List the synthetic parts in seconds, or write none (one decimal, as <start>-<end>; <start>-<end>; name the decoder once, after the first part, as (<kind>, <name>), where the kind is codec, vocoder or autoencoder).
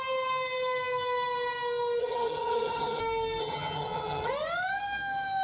2.0-3.0 (vocoder, HiFi-GAN); 3.4-4.3